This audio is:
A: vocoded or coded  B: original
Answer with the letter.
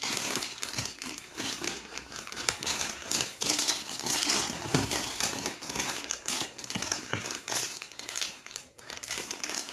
A